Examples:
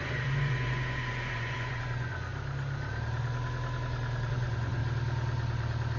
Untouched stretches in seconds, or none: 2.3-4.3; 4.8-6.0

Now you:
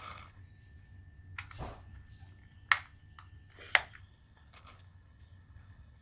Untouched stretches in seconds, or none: 0.4-4.0

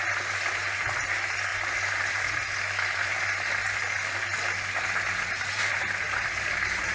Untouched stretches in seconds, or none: 0.0-6.9

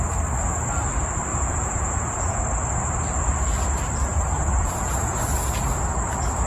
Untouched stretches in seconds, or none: 0.0-1.3; 2.4-4.1; 5.2-6.5

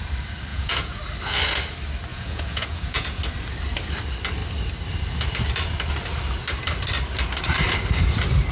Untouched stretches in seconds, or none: 0.0-0.5; 1.0-2.1; 3.2-8.5